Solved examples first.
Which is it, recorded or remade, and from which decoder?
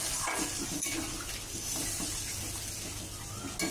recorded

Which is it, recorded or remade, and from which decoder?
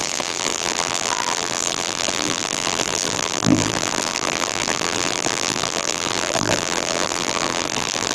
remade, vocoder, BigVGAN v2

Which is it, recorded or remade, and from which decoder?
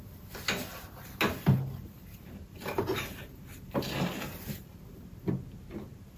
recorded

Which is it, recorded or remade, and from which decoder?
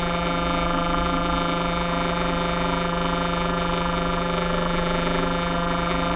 remade, vocoder, BigVGAN v2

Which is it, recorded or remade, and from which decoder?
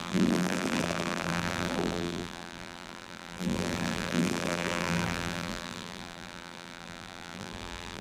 remade, vocoder, BigVGAN v2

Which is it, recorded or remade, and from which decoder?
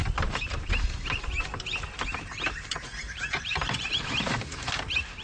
remade, vocoder, BigVGAN v2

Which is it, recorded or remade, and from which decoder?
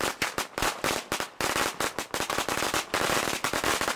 recorded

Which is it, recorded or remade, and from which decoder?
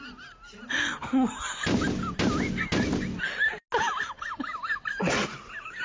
recorded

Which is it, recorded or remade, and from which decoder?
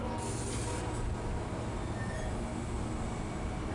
recorded